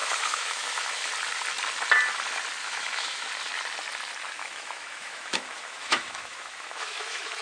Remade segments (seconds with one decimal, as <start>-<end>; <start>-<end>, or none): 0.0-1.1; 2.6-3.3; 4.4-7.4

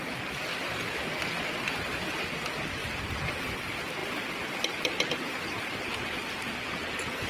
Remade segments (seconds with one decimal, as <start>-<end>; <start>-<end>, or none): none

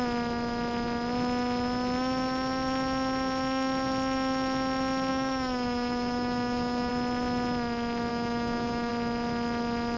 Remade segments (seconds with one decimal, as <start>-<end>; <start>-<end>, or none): 5.1-6.9; 8.1-8.9

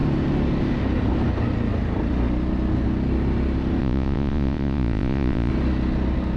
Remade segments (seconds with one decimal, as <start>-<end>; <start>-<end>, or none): 3.8-5.5